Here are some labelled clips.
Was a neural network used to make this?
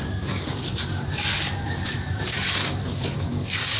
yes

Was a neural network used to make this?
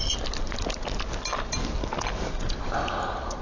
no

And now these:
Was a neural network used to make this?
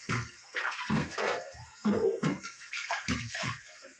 yes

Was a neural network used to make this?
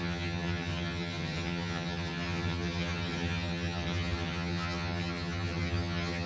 yes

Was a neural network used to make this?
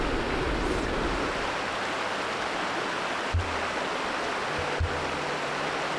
no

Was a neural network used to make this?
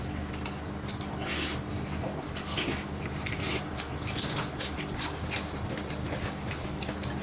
no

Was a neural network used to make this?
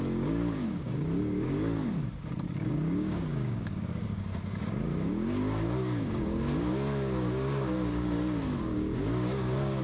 yes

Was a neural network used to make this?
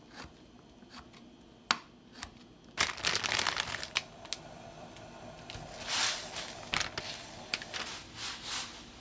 no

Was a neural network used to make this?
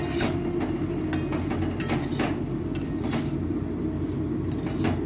no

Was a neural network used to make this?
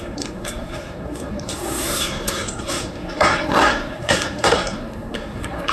yes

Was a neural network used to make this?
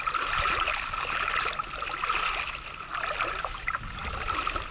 no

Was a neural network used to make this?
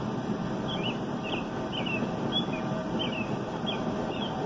yes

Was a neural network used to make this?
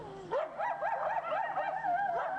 no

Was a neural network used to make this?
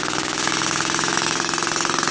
yes